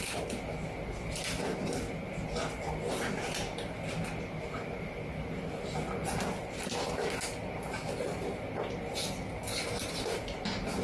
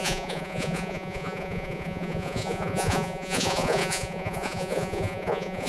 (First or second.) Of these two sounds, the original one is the first